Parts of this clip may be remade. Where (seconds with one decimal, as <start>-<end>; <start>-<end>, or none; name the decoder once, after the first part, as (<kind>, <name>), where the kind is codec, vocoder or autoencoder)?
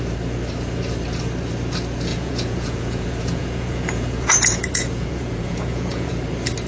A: 2.1-6.1 (vocoder, Vocos)